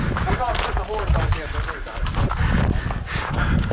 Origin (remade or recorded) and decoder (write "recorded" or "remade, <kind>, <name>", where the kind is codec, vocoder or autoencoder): recorded